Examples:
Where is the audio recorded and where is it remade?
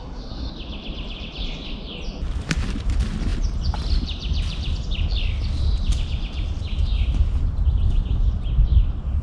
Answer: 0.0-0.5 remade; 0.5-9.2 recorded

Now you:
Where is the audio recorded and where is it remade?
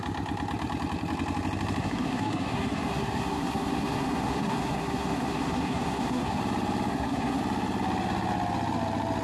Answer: 0.0-1.8 recorded; 1.8-6.4 remade; 6.4-6.9 recorded; 6.9-7.4 remade; 7.4-9.2 recorded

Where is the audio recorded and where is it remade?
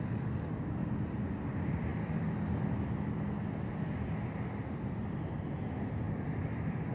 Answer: 0.0-6.9 recorded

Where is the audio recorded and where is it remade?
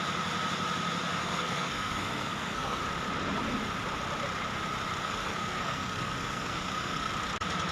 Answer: 0.0-1.2 recorded; 1.2-2.8 remade; 2.8-5.0 recorded; 5.0-7.1 remade; 7.1-7.7 recorded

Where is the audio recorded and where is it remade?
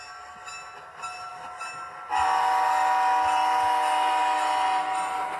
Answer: 0.0-5.4 recorded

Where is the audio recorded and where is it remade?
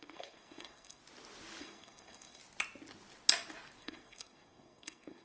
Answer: 0.0-1.0 remade; 1.0-1.6 recorded; 1.6-2.4 remade; 2.4-3.8 recorded; 3.8-5.2 remade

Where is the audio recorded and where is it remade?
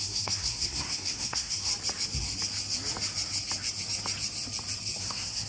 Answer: 0.0-1.7 remade; 1.7-5.0 recorded; 5.0-5.5 remade